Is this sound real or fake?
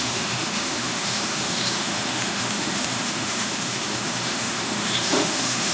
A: fake